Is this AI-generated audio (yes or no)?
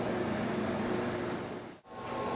no